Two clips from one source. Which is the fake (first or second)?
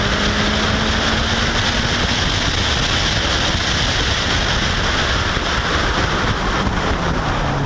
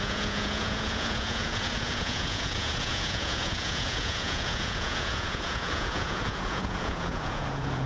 second